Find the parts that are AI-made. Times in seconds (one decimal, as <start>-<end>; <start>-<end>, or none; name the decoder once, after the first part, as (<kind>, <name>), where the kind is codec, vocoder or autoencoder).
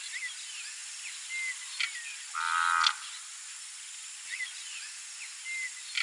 3.3-5.4 (vocoder, Vocos)